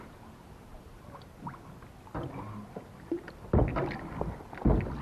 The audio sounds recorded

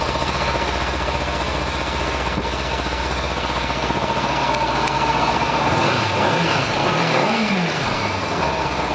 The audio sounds remade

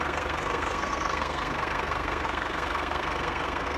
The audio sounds remade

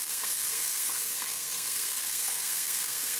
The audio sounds remade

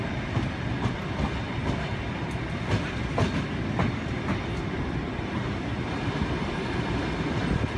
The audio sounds recorded